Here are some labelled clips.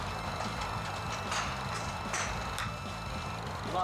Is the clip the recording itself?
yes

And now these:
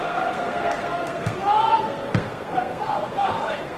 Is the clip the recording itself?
no